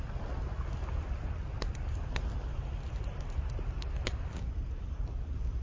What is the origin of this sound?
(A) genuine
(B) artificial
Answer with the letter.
A